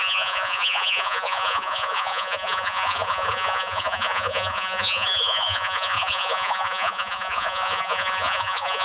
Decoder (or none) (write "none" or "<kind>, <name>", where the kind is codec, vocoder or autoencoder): vocoder, Vocos